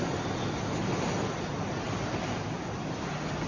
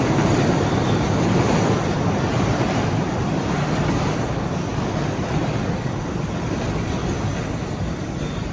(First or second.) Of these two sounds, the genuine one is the first